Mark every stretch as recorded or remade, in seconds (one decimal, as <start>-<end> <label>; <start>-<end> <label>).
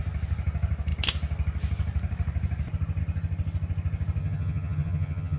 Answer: 0.0-4.2 recorded; 4.2-5.4 remade